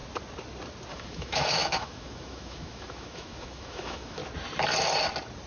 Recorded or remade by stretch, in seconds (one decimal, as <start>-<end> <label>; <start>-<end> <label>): 0.0-0.9 recorded; 0.9-4.2 remade; 4.2-5.5 recorded